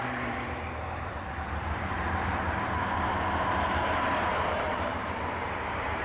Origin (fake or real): fake